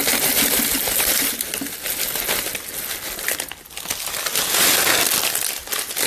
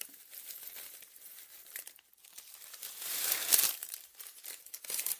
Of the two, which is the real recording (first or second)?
first